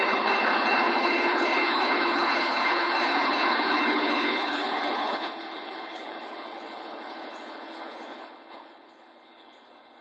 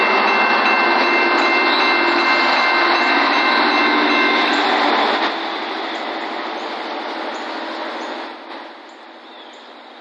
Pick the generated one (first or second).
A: first